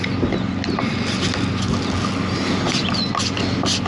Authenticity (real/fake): real